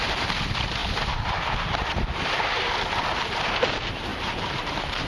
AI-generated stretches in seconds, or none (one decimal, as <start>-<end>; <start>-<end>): 4.1-5.1